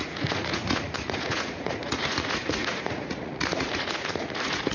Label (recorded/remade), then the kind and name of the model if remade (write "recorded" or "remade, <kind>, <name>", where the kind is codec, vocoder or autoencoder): remade, vocoder, Vocos